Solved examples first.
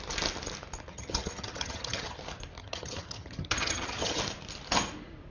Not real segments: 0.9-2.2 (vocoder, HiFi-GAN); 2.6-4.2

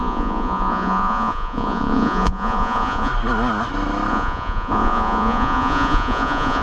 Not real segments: 0.0-3.1 (vocoder, Vocos); 4.1-6.6

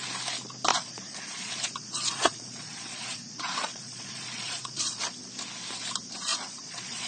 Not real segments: 0.7-5.0 (vocoder, Vocos); 6.3-7.1

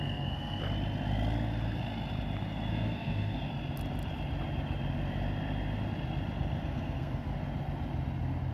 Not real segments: 0.0-0.6 (codec, SNAC); 2.7-3.5; 6.6-7.3